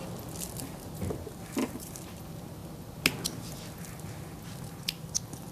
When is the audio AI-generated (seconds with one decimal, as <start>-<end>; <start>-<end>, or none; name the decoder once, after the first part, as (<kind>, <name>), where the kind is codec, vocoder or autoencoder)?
1.6-2.2 (vocoder, BigVGAN v2)